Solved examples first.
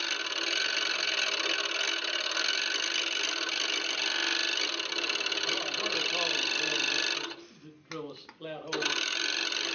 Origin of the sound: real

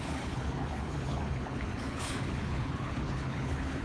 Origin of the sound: fake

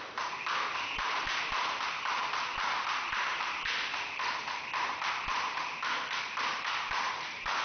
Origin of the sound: real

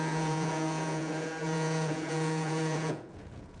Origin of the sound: fake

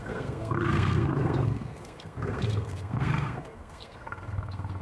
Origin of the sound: fake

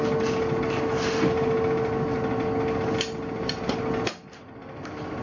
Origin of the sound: real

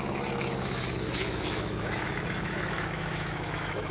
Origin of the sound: fake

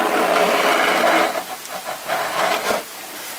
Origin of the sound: real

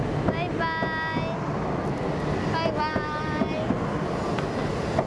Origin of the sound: real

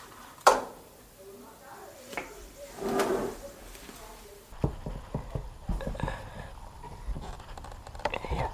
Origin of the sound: fake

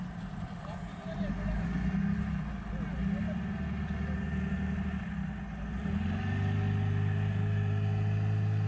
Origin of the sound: real